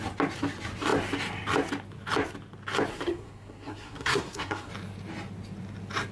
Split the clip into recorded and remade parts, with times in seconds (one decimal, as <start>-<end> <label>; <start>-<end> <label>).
0.0-2.9 recorded; 2.9-4.7 remade; 4.7-6.1 recorded